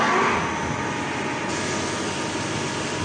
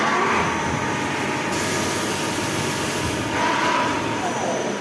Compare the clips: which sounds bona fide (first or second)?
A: first